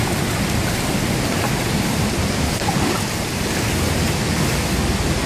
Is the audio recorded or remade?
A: recorded